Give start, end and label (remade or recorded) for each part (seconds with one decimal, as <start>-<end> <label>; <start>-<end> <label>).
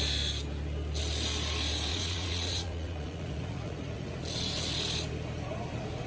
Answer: 0.0-1.9 recorded; 1.9-4.2 remade; 4.2-6.1 recorded